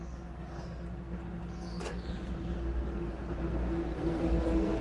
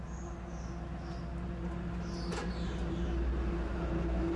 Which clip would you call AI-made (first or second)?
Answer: first